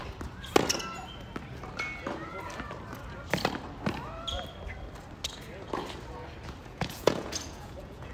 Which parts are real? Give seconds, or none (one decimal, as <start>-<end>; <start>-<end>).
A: 0.0-6.6

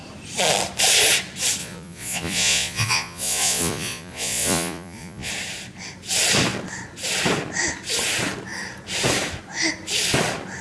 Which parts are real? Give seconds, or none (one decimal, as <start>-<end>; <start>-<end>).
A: 0.0-1.6; 5.3-10.6